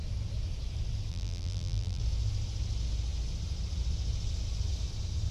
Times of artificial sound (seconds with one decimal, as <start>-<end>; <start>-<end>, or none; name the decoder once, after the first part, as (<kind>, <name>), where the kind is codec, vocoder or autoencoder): 1.1-2.0 (vocoder, BigVGAN v2)

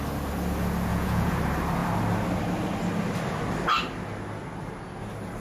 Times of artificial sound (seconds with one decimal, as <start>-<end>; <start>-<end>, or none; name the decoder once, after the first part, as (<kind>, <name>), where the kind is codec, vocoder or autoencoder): 0.9-1.4 (vocoder, Vocos)

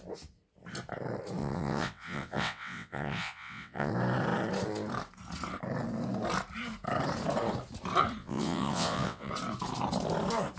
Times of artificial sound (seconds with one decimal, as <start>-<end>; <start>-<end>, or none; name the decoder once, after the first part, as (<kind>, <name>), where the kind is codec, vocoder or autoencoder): 1.4-3.9 (vocoder, WaveNeXt); 8.2-9.3

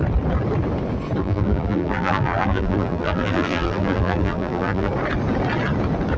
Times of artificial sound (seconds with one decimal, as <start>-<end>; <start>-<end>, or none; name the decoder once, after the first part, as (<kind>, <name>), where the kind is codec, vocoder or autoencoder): 1.2-4.9 (vocoder, BigVGAN v2)

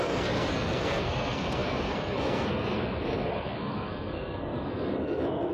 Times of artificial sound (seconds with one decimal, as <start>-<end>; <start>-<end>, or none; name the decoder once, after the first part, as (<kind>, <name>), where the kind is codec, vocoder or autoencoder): 0.0-5.5 (codec, SNAC)